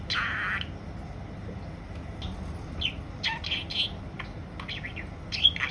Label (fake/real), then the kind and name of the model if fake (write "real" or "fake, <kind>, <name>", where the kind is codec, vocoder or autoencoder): real